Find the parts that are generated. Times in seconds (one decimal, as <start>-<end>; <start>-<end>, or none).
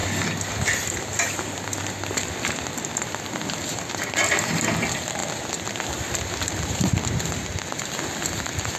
none